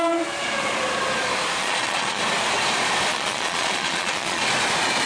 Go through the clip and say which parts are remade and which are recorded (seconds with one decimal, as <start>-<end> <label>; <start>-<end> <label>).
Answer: 0.0-1.6 recorded; 1.6-2.2 remade; 2.2-3.1 recorded; 3.1-4.4 remade; 4.4-5.1 recorded